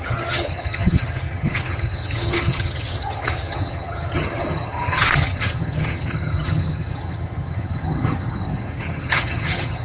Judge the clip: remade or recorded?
remade